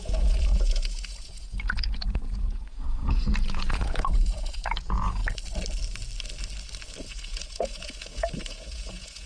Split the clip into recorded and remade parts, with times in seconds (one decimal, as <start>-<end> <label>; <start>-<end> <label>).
0.0-5.2 remade; 5.2-7.0 recorded; 7.0-9.3 remade